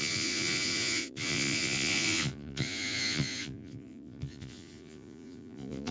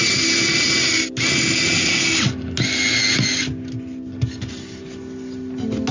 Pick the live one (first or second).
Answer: second